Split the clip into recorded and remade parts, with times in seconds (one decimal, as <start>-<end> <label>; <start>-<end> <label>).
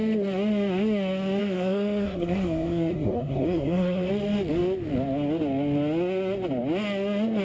0.0-1.4 recorded; 1.4-4.1 remade; 4.1-7.4 recorded